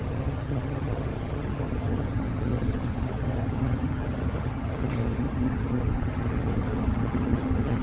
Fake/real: fake